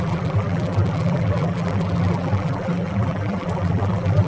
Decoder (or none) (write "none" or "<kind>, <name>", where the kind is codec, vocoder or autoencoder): vocoder, BigVGAN v2